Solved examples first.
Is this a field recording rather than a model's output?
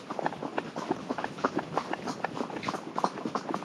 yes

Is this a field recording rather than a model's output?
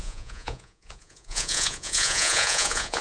no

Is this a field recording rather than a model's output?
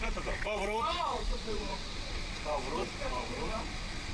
no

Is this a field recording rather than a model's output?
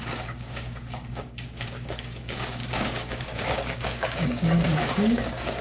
no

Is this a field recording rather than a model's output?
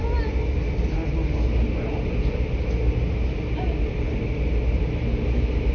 yes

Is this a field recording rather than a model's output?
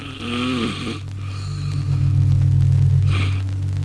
yes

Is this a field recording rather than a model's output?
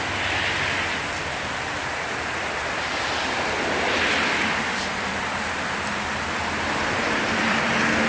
yes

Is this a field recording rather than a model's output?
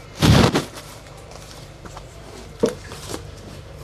no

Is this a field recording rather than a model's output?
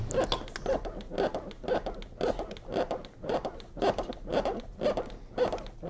yes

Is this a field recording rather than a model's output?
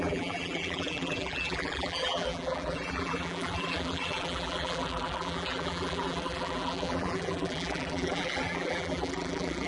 no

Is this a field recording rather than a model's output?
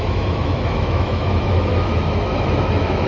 no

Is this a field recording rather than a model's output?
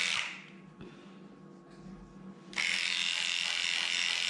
yes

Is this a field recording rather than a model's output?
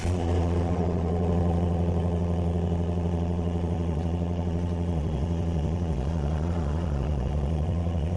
no